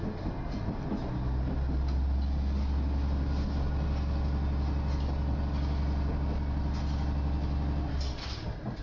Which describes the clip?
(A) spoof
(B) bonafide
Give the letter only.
B